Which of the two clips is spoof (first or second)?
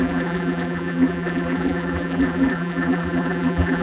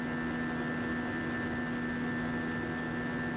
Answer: first